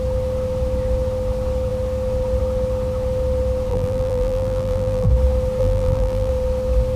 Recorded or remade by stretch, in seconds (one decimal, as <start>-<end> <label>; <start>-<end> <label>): 0.0-3.7 recorded; 3.7-5.1 remade; 5.1-5.6 recorded; 5.6-6.3 remade; 6.3-7.0 recorded